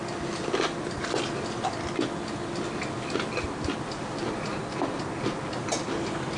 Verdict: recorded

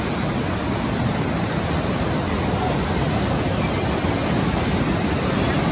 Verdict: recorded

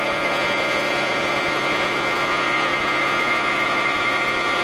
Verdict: remade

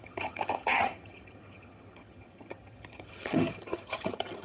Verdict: remade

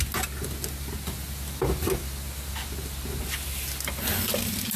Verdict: recorded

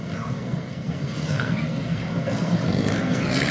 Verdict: remade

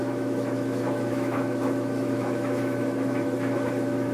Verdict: remade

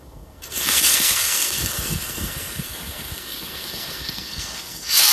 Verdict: remade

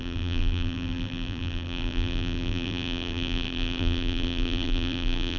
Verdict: remade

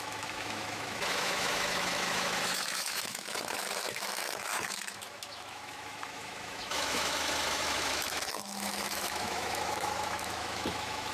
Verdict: remade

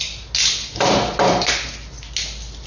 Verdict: recorded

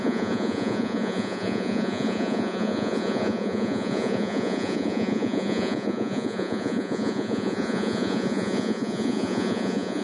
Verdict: remade